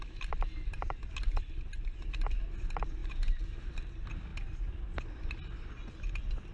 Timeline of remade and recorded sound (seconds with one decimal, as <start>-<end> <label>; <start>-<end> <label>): 0.0-3.0 recorded; 3.0-3.9 remade; 3.9-6.5 recorded